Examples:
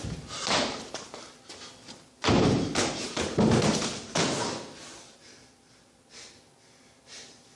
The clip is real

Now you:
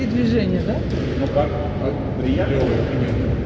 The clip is real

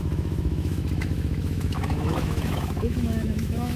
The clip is fake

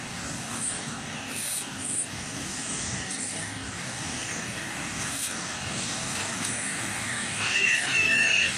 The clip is fake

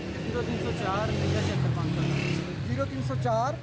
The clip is real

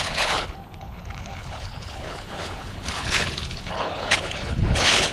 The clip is fake